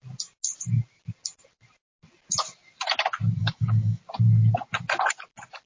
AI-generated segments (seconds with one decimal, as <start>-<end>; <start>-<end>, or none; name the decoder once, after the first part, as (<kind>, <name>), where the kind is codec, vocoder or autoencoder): 3.4-4.0 (codec, DAC)